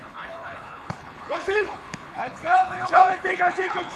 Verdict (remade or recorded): remade